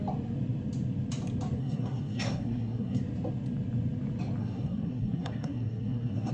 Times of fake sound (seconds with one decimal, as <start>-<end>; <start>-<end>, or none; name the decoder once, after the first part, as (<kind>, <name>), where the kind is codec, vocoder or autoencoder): 1.6-3.0 (codec, SNAC); 4.4-6.3